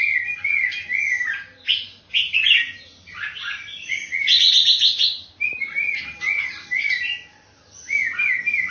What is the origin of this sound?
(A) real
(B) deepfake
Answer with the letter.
A